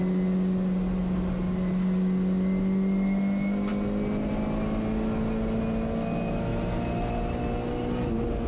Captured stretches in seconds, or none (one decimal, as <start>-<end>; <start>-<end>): 0.0-8.5